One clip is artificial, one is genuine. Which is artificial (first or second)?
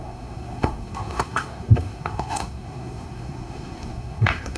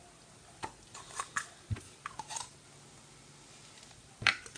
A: first